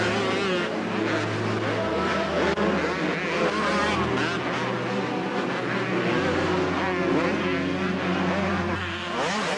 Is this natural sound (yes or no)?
yes